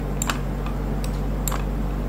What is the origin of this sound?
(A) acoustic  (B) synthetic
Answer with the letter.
A